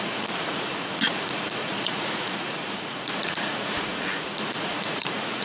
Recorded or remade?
remade